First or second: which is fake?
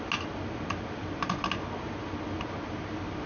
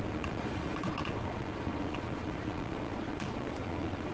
second